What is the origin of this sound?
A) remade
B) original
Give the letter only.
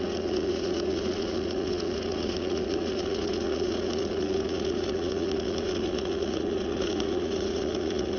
A